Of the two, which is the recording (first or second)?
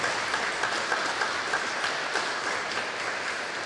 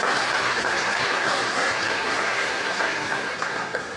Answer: first